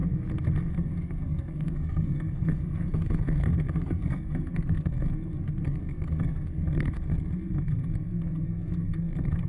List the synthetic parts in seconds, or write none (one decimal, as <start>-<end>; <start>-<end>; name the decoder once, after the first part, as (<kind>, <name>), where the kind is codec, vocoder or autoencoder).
0.7-9.5 (codec, SNAC)